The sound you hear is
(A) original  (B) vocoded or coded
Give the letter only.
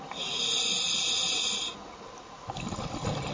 A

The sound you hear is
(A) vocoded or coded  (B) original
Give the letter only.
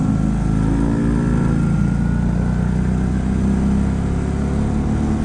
B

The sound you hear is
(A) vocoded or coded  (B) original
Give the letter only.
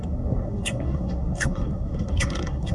A